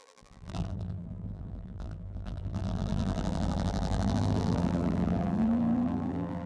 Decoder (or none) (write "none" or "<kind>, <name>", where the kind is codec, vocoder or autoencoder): vocoder, BigVGAN v2